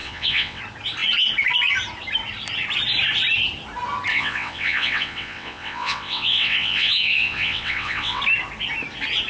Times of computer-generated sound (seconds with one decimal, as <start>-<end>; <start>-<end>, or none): 0.0-0.6; 4.1-8.2